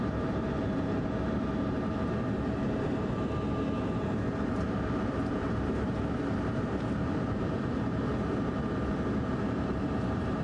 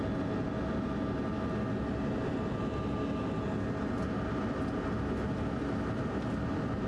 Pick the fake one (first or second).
first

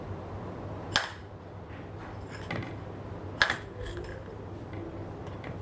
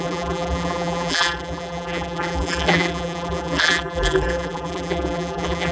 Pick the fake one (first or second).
second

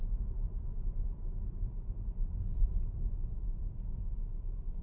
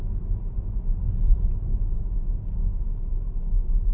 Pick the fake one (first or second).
first